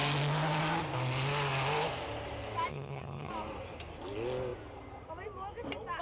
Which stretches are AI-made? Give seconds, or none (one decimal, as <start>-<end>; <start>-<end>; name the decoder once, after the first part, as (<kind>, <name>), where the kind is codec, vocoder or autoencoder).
2.7-3.3 (vocoder, HiFi-GAN)